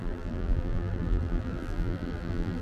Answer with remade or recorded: remade